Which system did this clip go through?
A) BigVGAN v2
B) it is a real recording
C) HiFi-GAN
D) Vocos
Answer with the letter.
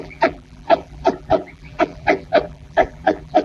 A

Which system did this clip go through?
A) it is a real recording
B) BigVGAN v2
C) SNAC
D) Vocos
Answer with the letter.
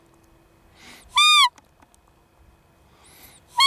A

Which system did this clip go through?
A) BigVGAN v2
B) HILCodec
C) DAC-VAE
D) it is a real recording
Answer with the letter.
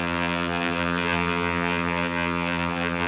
A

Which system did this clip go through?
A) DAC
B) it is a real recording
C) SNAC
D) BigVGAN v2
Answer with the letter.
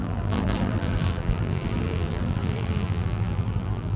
D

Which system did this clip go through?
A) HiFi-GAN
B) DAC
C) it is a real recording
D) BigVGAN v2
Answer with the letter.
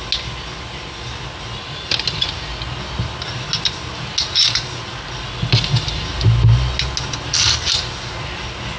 C